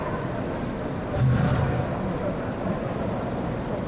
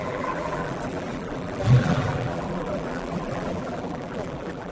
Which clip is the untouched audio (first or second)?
first